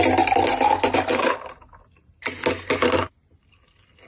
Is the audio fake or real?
real